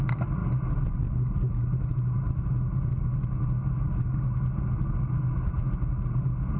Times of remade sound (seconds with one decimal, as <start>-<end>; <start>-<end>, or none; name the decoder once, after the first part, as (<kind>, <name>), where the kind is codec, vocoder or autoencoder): none